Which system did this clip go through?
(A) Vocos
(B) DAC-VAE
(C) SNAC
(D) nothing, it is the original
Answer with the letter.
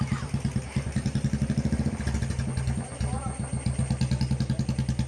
D